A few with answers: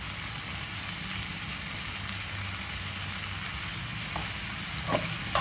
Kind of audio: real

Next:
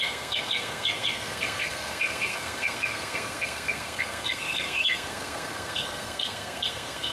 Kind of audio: fake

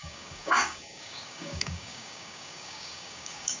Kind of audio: fake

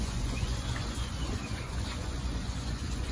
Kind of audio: fake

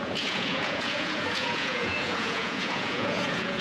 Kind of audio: fake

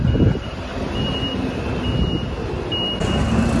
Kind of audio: real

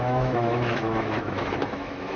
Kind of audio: fake